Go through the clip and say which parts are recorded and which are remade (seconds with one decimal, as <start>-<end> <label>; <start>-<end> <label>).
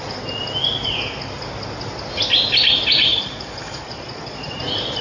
0.0-3.1 recorded; 3.1-4.6 remade; 4.6-5.0 recorded